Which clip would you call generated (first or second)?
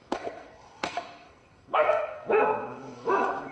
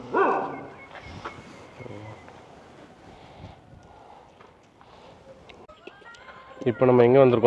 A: first